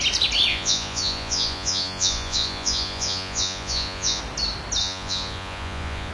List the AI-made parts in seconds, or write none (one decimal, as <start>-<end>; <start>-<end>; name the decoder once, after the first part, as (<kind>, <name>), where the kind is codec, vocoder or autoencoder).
0.5-4.2 (vocoder, Vocos); 4.8-6.1